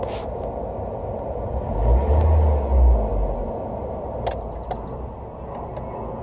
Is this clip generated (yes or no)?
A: no